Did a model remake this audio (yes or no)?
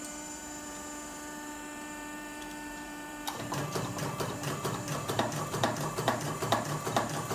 yes